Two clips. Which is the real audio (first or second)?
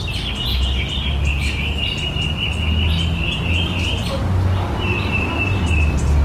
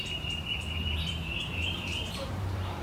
first